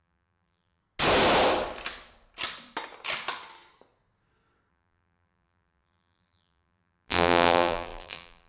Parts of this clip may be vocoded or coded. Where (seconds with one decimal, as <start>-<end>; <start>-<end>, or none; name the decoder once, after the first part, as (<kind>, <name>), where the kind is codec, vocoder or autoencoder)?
0.0-0.8 (vocoder, BigVGAN v2); 4.7-8.5